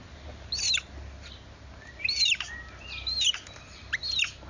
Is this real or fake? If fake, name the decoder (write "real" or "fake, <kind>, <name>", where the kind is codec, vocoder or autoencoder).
real